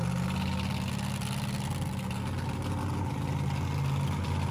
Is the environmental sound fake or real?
real